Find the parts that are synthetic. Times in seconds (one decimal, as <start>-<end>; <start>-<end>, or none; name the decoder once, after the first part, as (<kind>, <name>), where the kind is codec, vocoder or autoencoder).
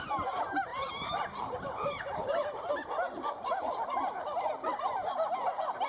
0.7-2.7 (vocoder, BigVGAN v2)